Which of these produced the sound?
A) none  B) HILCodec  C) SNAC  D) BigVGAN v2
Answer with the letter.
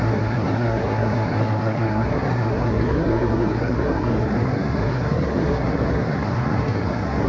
C